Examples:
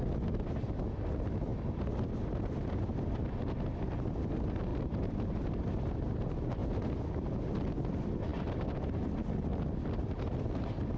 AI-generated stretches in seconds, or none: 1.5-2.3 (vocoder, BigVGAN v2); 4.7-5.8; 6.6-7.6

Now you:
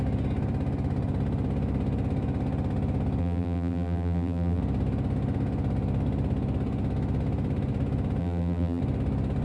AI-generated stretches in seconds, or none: 3.2-4.6 (vocoder, BigVGAN v2); 8.2-8.8

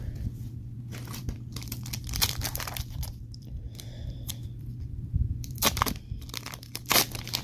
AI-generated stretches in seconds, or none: 0.0-7.4 (vocoder, BigVGAN v2)